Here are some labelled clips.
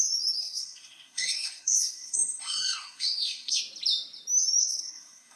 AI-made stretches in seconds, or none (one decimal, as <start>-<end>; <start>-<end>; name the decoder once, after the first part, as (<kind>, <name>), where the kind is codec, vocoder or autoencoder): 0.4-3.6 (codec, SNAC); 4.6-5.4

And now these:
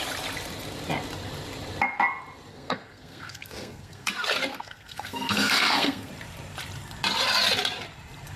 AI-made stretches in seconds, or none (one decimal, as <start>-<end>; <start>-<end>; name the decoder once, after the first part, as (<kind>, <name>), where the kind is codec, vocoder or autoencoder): 2.5-4.1 (codec, SNAC); 4.5-6.1

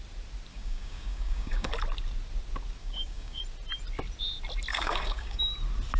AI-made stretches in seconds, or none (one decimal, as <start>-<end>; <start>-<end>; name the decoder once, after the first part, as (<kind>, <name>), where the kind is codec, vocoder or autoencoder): 0.5-1.7 (codec, DAC); 2.8-3.4; 4.7-5.4